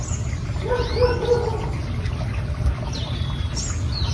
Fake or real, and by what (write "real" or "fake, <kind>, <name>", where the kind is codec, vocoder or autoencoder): real